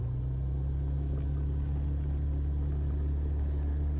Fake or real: real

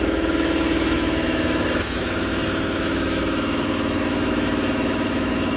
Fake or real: fake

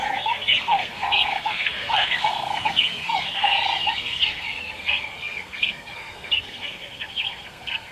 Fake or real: fake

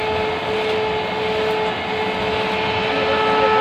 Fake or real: real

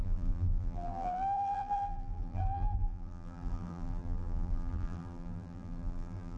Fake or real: fake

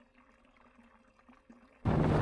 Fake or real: real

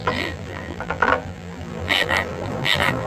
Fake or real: fake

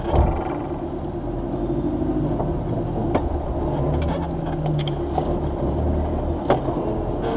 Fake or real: real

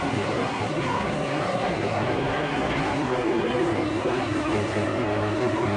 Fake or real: fake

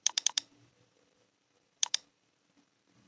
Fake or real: fake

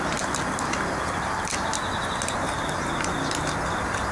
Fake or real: real